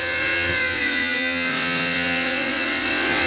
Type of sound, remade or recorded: remade